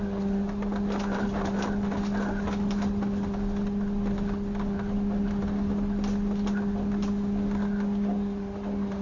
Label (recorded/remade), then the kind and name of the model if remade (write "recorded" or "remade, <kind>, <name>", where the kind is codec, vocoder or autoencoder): recorded